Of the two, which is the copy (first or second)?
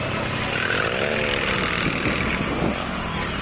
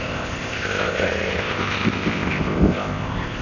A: second